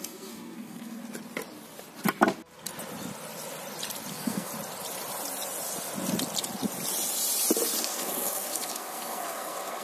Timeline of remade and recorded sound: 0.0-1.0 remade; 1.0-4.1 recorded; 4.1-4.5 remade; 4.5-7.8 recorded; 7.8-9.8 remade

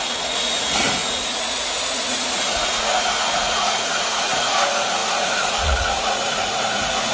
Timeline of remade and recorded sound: 0.0-7.1 remade

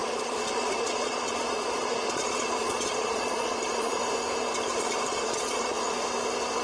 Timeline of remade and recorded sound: 0.0-4.0 remade; 4.0-5.1 recorded; 5.1-5.9 remade; 5.9-6.6 recorded

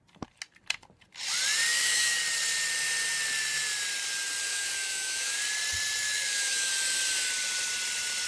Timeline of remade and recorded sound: 0.0-1.7 recorded; 1.7-2.2 remade; 2.2-4.5 recorded; 4.5-5.4 remade; 5.4-6.0 recorded; 6.0-6.7 remade; 6.7-8.3 recorded

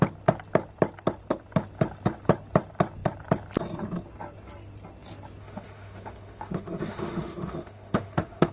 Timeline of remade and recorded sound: 0.0-5.4 recorded; 5.4-8.5 remade